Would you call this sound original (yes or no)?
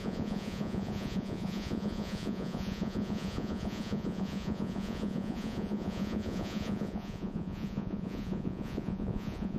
no